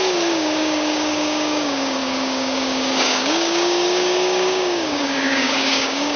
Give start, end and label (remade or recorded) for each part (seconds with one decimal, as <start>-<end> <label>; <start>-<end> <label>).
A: 0.0-6.2 remade